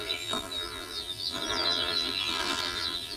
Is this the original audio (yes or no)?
no